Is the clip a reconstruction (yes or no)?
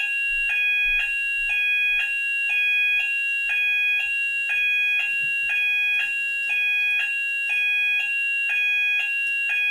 no